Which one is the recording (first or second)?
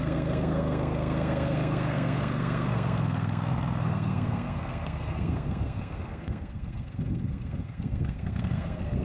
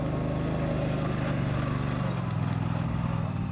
second